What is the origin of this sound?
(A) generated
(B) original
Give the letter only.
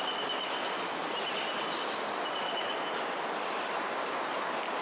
B